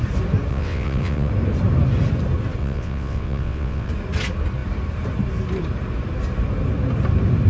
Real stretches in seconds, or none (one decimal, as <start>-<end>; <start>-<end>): 0.0-0.5; 1.3-2.6; 3.9-7.5

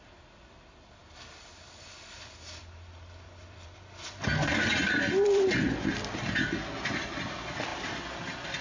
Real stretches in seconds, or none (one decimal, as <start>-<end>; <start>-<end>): 1.0-2.6

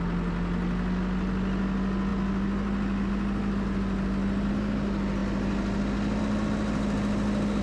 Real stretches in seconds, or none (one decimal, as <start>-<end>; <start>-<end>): 0.0-7.6

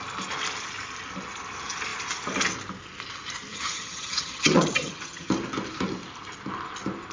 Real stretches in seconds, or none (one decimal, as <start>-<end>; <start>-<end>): 0.0-3.5; 5.3-7.1

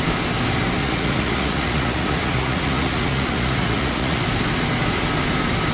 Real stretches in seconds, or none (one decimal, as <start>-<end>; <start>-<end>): 0.0-0.8; 4.2-5.7

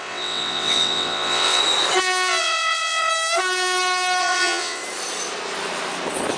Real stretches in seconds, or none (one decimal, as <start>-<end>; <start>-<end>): 1.6-2.4; 3.1-4.2; 4.8-6.4

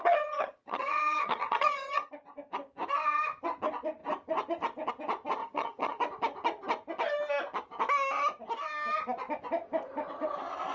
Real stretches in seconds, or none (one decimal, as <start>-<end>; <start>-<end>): 2.1-5.4; 6.0-10.7